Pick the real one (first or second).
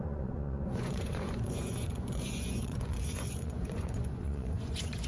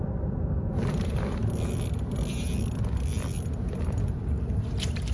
second